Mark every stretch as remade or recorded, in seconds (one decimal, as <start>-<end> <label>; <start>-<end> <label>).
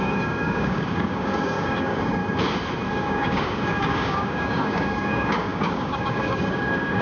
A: 0.0-2.2 remade; 2.2-2.9 recorded; 2.9-7.0 remade